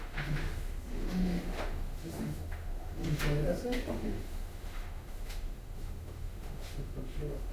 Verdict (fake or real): fake